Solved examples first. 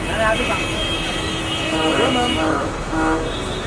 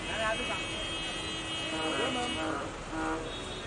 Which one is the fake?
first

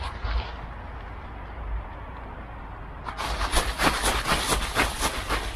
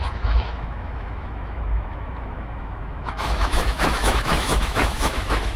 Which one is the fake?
second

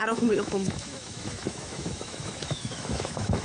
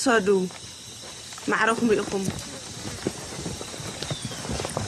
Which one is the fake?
first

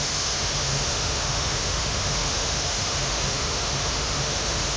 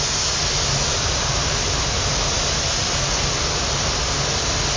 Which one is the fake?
first